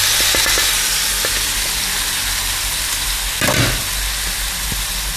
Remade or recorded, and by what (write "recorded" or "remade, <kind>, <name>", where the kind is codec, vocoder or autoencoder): recorded